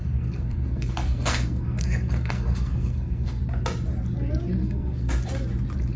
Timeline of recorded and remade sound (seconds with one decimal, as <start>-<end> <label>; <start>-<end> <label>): 0.0-3.4 remade; 3.4-4.6 recorded; 4.6-5.1 remade; 5.1-6.0 recorded